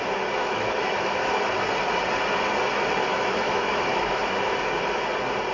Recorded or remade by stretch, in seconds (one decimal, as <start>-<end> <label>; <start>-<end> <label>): 0.0-0.4 recorded; 0.4-1.5 remade; 1.5-3.1 recorded; 3.1-4.2 remade; 4.2-5.5 recorded